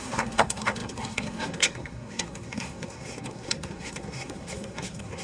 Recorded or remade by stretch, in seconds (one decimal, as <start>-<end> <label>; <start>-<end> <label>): 0.0-5.2 remade